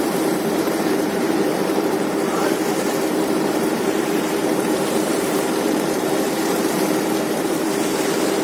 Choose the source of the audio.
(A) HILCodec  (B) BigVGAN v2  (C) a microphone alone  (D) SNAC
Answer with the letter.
B